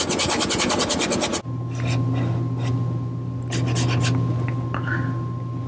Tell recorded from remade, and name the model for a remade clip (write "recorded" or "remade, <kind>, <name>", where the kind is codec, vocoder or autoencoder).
recorded